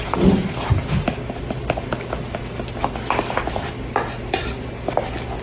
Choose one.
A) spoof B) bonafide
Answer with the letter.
B